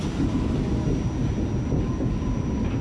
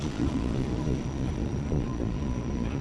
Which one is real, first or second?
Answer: first